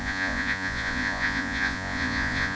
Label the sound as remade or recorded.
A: remade